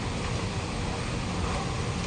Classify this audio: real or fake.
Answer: real